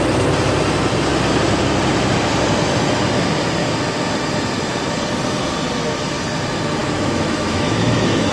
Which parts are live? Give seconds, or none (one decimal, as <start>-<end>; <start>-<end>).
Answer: 0.0-6.8